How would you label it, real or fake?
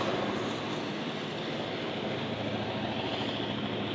real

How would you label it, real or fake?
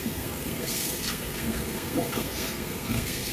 fake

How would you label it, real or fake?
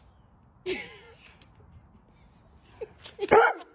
real